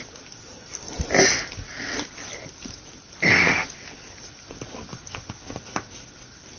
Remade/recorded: recorded